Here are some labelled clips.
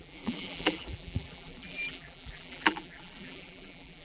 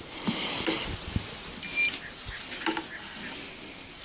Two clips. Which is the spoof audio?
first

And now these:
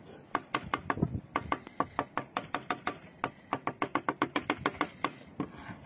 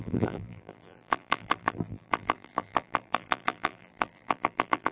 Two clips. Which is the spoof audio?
second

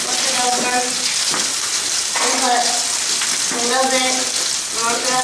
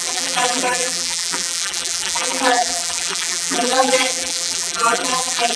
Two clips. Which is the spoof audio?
second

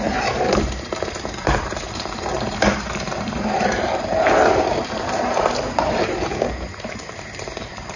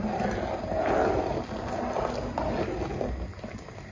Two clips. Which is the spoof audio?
first